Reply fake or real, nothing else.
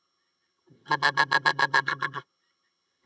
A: fake